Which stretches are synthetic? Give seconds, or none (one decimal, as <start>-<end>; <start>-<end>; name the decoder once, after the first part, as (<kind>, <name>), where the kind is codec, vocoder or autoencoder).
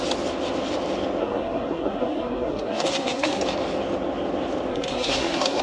1.2-3.4 (codec, SNAC); 4.7-5.6